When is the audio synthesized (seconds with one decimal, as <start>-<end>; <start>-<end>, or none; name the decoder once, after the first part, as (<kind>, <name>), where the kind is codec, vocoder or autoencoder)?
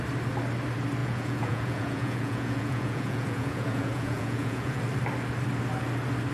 1.0-4.8 (vocoder, Vocos)